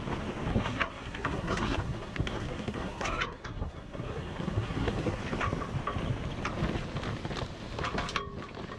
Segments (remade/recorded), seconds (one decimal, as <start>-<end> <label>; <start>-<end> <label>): 0.0-0.5 recorded; 0.5-5.2 remade; 5.2-8.8 recorded